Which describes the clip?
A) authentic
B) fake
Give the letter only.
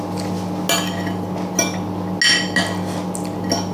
A